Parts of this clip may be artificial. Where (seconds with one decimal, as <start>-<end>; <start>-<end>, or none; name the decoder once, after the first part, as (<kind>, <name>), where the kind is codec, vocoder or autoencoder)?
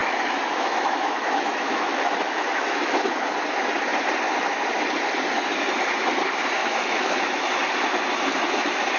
0.0-3.3 (autoencoder, DAC-VAE); 6.6-7.6